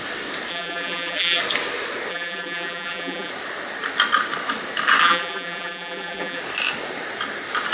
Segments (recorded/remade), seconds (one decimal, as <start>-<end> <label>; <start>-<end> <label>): 0.0-0.5 recorded; 0.5-1.4 remade; 1.4-2.1 recorded; 2.1-3.3 remade; 3.3-5.0 recorded; 5.0-6.4 remade; 6.4-7.7 recorded